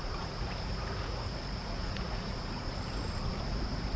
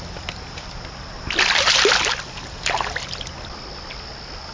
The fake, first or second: first